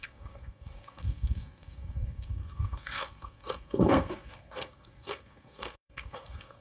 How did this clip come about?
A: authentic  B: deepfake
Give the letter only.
B